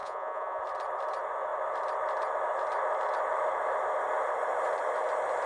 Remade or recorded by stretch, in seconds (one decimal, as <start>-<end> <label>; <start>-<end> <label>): 0.0-0.6 remade; 0.6-5.5 recorded